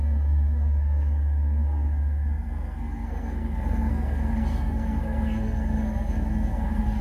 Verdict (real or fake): fake